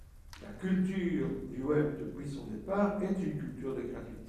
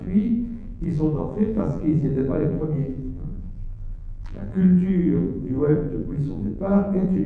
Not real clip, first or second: second